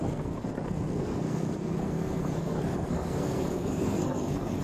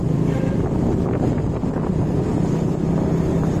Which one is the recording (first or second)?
second